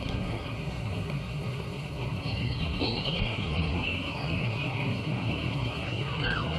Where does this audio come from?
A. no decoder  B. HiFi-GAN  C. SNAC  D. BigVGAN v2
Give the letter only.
C